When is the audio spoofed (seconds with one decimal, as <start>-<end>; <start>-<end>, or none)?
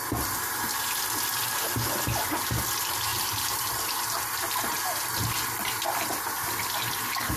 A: 3.1-3.9